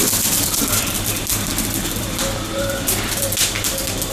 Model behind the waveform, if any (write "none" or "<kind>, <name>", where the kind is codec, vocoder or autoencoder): vocoder, BigVGAN v2